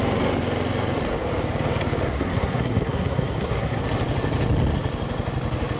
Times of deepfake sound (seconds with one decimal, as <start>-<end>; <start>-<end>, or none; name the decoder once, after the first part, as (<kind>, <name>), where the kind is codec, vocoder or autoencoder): 2.1-3.8 (codec, SNAC)